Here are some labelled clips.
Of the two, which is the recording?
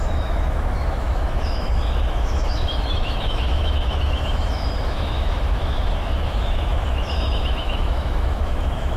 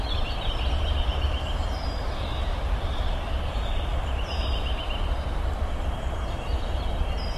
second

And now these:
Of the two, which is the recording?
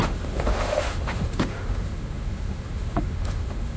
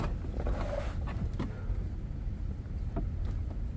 second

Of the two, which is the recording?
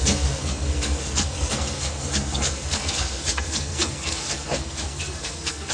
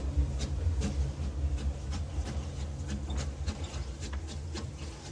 second